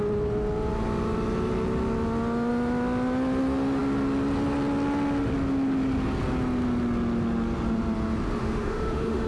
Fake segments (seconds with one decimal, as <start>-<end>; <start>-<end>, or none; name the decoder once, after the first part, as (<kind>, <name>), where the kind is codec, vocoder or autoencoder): 8.4-9.3 (autoencoder, DAC-VAE)